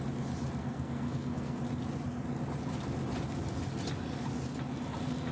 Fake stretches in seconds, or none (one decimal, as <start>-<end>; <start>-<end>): 0.6-1.6